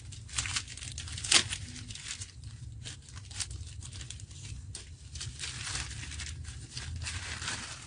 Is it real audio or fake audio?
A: real